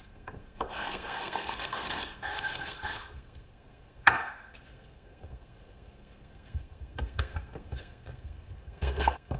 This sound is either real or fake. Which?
fake